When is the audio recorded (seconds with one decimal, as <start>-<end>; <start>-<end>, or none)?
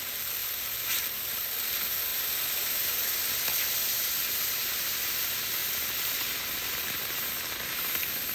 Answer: 0.0-0.4; 1.0-2.1; 4.9-8.3